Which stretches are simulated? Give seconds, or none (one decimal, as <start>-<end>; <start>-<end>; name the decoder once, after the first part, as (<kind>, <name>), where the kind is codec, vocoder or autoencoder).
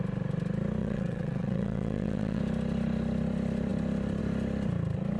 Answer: 0.8-2.4 (vocoder, WaveNeXt)